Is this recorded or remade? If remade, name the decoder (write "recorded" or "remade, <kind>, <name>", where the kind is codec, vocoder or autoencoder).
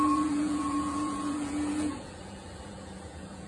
remade, vocoder, Vocos